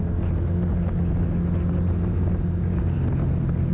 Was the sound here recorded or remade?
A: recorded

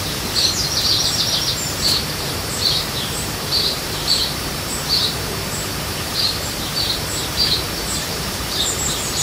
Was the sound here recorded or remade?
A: remade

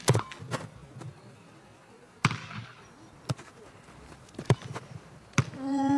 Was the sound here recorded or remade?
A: recorded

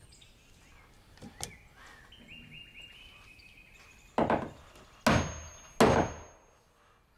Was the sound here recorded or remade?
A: recorded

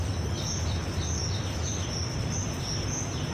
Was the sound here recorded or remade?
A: recorded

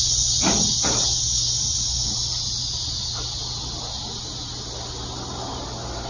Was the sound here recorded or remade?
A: recorded